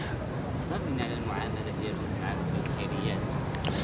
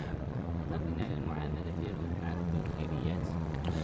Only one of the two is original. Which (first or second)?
first